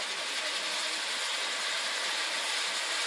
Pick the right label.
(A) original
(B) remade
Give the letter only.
A